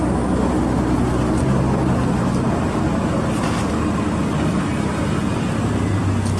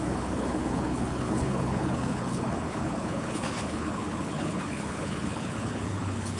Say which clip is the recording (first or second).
first